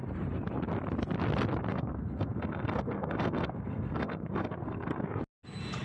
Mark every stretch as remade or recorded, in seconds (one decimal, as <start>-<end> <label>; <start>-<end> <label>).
0.0-1.7 recorded; 1.7-5.2 remade; 5.2-5.8 recorded